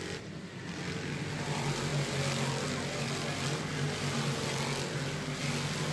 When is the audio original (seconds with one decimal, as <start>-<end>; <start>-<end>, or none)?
0.0-5.9